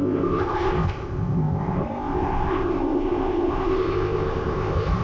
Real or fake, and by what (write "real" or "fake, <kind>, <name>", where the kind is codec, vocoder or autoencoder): fake, codec, ZipCodec